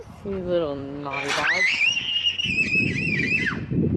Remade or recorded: remade